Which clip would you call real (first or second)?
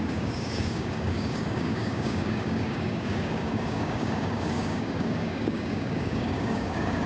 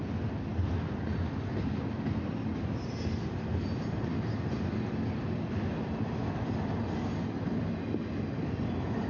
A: second